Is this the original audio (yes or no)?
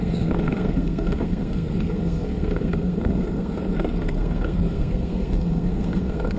no